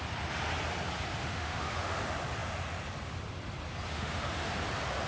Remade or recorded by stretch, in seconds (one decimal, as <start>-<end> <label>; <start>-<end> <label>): 0.0-1.2 recorded; 1.2-2.0 remade; 2.0-3.9 recorded; 3.9-4.5 remade; 4.5-5.1 recorded

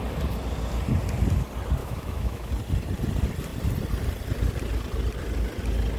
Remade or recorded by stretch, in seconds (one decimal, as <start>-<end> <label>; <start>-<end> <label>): 0.0-1.8 recorded; 1.8-2.5 remade; 2.5-6.0 recorded

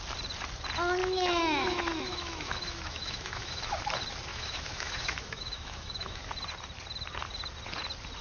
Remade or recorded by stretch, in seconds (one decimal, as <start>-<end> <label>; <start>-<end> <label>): 0.0-1.0 recorded; 1.0-3.8 remade; 3.8-4.3 recorded; 4.3-6.3 remade; 6.3-8.2 recorded

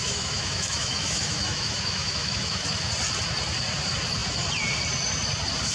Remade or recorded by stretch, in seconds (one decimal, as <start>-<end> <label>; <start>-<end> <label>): 0.0-2.9 remade; 2.9-5.7 recorded

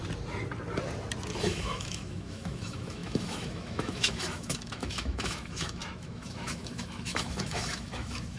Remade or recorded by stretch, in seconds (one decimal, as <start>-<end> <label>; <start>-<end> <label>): 0.0-1.4 recorded; 1.4-8.4 remade

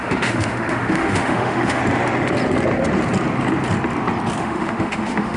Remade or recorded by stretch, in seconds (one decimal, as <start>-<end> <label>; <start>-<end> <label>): 0.0-1.8 remade; 1.8-4.4 recorded; 4.4-5.4 remade

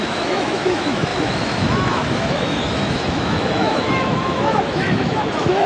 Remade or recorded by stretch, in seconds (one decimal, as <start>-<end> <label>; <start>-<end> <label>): 0.0-5.7 remade

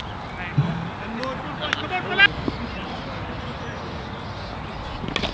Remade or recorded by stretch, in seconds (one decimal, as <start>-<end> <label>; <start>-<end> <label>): 0.0-5.3 recorded